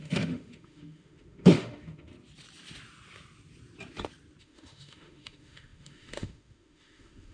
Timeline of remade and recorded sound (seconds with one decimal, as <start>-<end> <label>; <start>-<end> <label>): 0.0-2.1 remade; 2.1-4.4 recorded; 4.4-7.3 remade